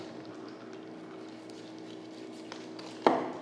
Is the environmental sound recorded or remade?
recorded